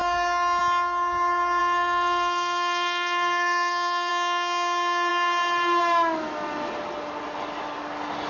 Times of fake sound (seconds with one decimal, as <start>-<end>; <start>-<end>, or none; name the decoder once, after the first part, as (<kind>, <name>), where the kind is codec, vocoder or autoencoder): 1.6-4.1 (codec, SNAC)